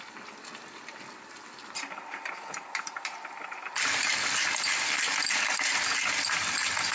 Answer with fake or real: real